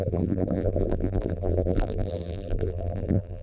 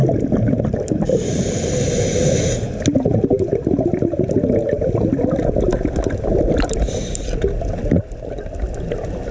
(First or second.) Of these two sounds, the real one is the second